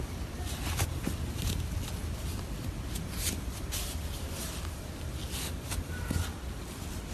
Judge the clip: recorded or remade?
recorded